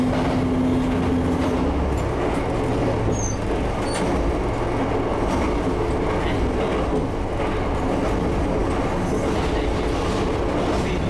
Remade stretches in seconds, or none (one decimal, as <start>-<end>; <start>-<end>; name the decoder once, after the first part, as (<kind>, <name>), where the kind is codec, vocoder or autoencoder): none